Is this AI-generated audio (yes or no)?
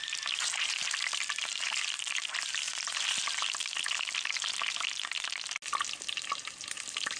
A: no